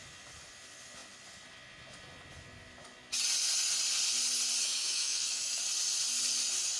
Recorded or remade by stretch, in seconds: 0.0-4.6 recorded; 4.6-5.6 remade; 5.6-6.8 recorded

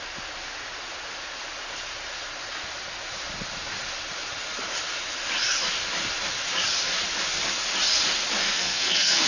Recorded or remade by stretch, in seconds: 0.0-8.4 recorded; 8.4-9.3 remade

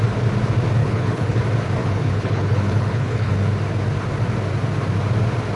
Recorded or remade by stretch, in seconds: 0.0-0.8 recorded; 0.8-1.4 remade; 1.4-1.8 recorded; 1.8-3.3 remade; 3.3-5.6 recorded

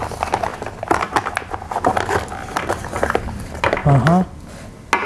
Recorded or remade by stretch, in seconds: 0.0-5.1 recorded

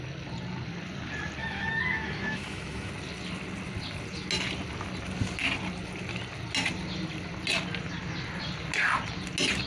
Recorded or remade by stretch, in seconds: 0.0-1.4 recorded; 1.4-2.9 remade; 2.9-9.7 recorded